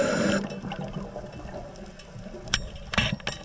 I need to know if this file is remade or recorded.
recorded